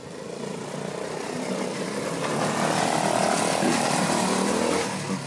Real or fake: real